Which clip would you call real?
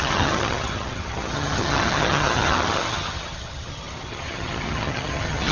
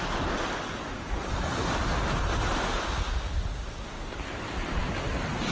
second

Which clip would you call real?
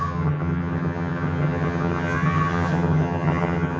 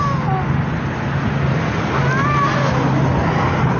second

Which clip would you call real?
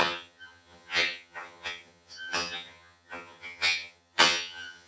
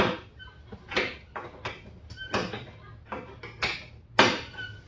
second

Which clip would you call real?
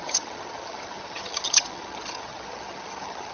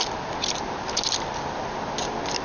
second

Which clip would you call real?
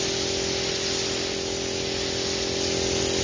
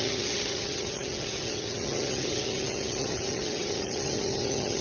first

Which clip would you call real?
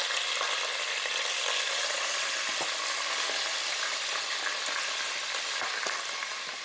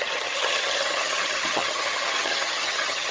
first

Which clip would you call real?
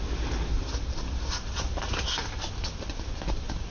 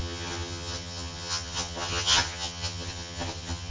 first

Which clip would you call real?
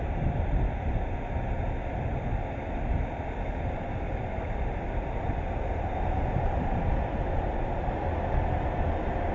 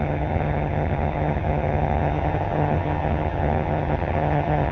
first